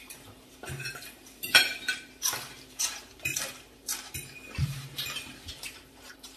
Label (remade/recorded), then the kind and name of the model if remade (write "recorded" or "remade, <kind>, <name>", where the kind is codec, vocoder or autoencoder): remade, vocoder, BigVGAN v2